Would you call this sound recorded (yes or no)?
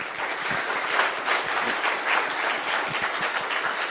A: yes